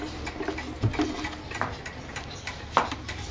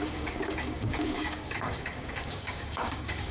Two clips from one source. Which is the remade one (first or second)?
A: second